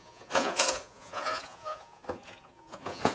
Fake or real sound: fake